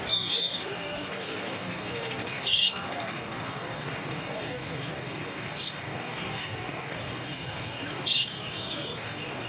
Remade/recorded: remade